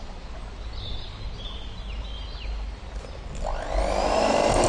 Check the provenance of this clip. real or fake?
real